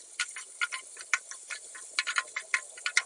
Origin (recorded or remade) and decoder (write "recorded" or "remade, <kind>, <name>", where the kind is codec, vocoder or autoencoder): recorded